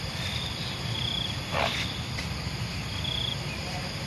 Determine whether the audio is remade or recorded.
recorded